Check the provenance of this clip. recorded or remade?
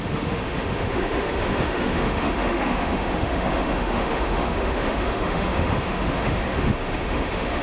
remade